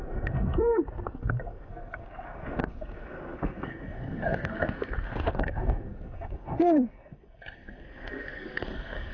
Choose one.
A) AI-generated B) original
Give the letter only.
A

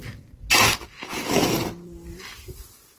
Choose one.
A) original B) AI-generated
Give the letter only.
A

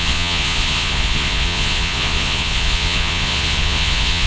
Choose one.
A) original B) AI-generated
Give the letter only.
B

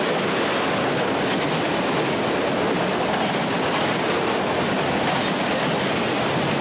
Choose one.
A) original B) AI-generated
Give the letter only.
A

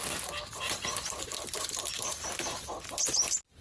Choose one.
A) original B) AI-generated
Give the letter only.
A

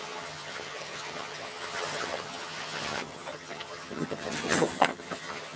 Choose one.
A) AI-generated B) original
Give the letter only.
A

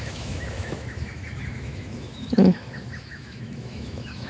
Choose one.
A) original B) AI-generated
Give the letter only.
B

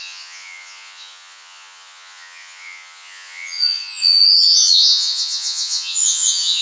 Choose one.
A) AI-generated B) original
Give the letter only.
A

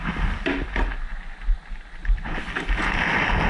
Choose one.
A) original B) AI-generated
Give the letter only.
A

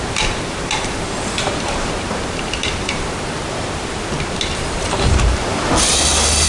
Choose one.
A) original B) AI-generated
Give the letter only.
B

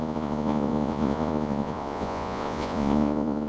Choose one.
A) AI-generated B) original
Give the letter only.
A